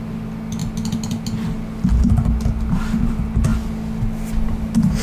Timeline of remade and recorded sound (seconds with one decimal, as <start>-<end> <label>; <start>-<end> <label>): 0.0-5.0 recorded